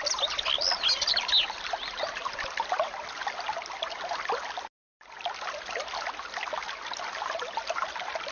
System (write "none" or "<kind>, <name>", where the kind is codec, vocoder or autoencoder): none